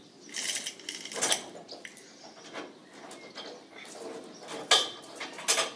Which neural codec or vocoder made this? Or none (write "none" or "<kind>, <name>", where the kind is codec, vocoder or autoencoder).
none